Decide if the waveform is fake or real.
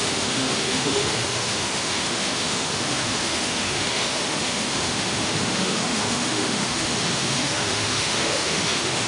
fake